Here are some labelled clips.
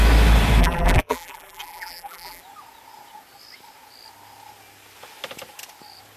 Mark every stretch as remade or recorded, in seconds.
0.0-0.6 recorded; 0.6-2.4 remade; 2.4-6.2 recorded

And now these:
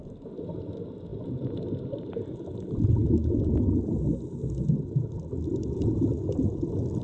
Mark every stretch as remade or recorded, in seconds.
0.0-7.0 recorded

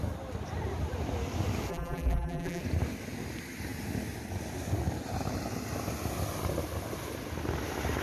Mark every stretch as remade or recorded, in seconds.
0.0-1.7 recorded; 1.7-2.6 remade; 2.6-8.0 recorded

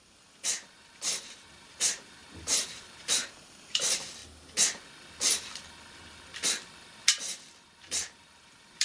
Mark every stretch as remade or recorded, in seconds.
0.0-4.2 remade; 4.2-7.8 recorded; 7.8-8.8 remade

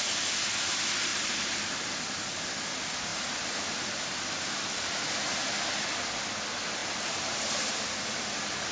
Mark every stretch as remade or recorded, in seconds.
0.0-1.1 recorded; 1.1-2.5 remade; 2.5-3.1 recorded; 3.1-4.0 remade; 4.0-6.8 recorded; 6.8-7.5 remade; 7.5-8.7 recorded